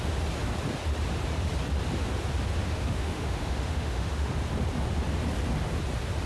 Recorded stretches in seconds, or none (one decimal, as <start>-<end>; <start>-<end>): 0.0-2.6; 4.3-6.3